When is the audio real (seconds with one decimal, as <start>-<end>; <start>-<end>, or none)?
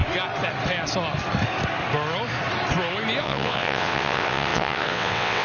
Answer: 0.0-3.2